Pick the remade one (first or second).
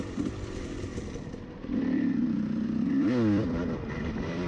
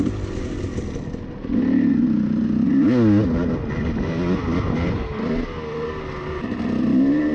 first